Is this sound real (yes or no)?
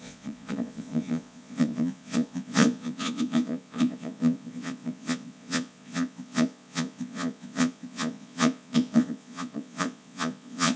no